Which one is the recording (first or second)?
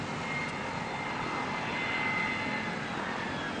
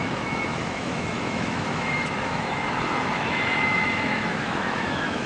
first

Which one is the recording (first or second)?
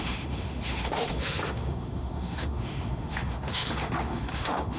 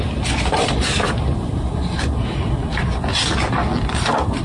second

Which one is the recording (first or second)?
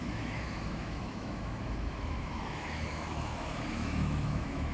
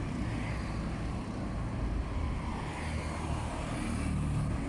second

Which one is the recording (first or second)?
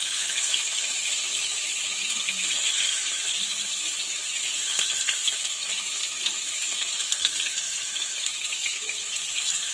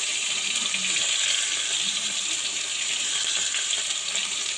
second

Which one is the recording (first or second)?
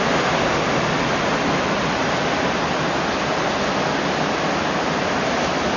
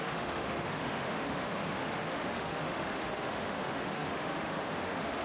first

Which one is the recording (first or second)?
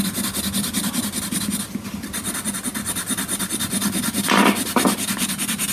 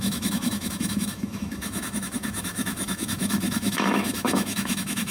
first